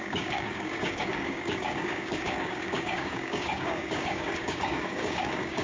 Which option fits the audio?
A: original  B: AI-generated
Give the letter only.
B